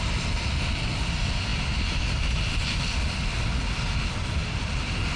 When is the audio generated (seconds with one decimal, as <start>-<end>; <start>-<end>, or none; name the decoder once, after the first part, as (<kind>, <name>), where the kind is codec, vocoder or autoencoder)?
none